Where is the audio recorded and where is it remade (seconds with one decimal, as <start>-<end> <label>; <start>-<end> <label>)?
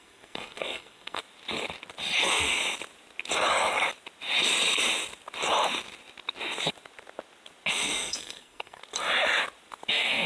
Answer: 0.0-1.2 remade; 1.2-2.2 recorded; 2.2-2.6 remade; 2.6-7.7 recorded; 7.7-8.8 remade; 8.8-9.9 recorded; 9.9-10.3 remade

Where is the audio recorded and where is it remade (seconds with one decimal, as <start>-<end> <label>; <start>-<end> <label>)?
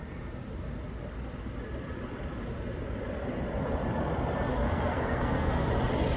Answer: 0.0-4.5 recorded; 4.5-5.7 remade; 5.7-6.2 recorded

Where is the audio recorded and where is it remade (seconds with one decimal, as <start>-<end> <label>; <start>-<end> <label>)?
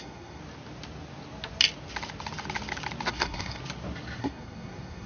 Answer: 0.0-0.4 remade; 0.4-3.1 recorded; 3.1-3.6 remade; 3.6-4.2 recorded; 4.2-5.1 remade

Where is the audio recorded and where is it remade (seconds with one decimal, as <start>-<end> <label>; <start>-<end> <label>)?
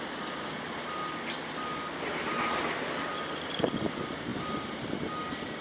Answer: 0.0-5.6 recorded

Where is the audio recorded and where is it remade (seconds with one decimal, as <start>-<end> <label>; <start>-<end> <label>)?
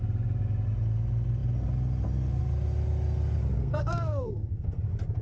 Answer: 0.0-3.6 recorded; 3.6-4.8 remade; 4.8-5.2 recorded